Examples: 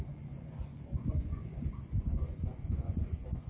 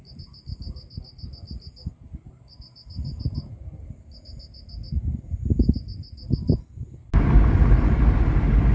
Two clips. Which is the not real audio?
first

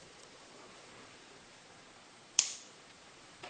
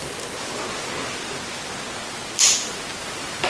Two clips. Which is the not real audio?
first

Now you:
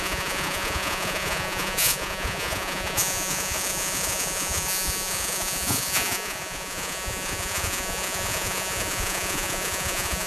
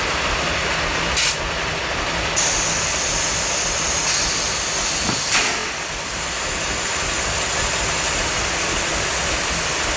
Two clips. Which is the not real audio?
first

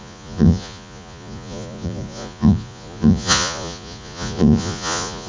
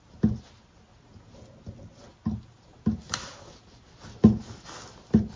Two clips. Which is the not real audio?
first